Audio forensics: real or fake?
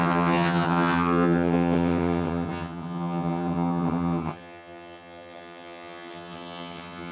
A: fake